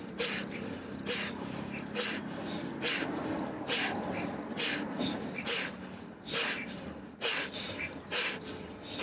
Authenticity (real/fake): real